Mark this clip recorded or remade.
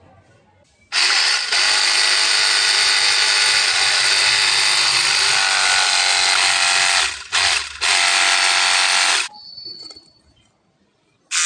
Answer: recorded